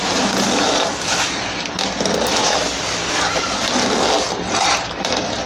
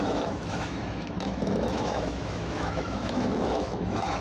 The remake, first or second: second